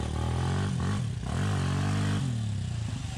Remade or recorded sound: recorded